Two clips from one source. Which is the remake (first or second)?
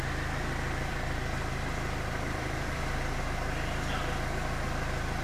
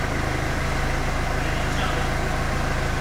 first